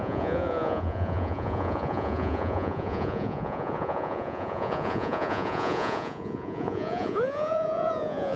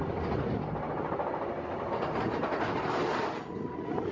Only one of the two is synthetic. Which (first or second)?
first